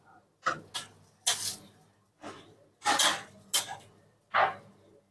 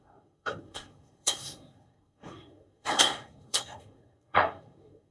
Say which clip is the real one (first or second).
first